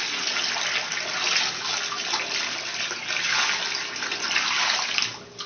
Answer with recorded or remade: recorded